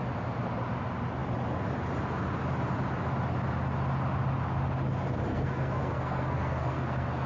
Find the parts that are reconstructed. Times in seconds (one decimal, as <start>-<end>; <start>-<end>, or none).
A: 5.3-7.3